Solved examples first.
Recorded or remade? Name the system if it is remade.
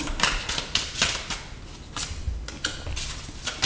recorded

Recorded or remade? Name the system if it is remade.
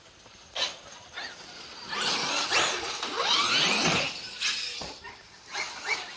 recorded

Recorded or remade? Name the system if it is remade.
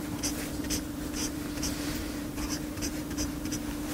remade, vocoder, BigVGAN v2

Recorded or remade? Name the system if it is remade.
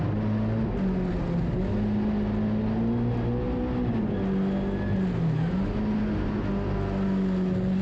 recorded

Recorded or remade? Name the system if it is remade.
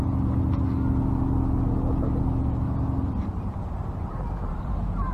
recorded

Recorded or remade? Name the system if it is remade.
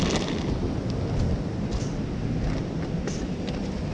recorded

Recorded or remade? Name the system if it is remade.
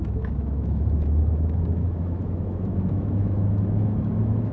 remade, autoencoder, DAC-VAE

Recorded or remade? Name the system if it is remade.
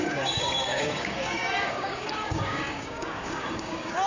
remade, codec, DAC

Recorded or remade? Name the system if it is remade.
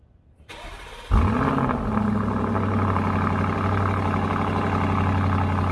recorded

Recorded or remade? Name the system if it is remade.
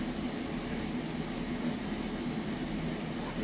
recorded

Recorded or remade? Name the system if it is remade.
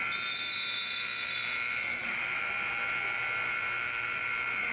remade, vocoder, BigVGAN v2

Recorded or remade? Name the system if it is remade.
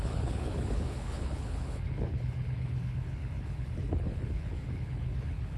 remade, codec, HILCodec